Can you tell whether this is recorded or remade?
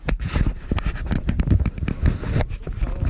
recorded